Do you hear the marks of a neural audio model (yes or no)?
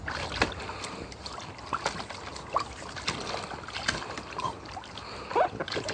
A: no